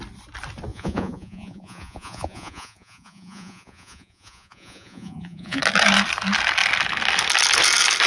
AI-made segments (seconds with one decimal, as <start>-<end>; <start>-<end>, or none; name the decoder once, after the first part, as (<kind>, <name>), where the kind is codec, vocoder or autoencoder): 0.7-5.6 (vocoder, Vocos)